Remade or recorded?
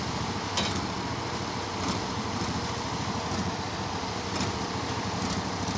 remade